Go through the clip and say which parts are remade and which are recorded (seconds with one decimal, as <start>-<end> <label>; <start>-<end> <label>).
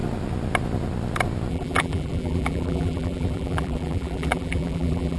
0.0-1.5 recorded; 1.5-5.2 remade